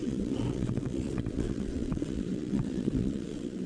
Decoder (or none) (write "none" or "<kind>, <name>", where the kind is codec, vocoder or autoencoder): vocoder, WaveNeXt